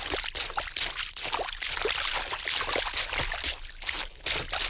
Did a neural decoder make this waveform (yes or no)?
no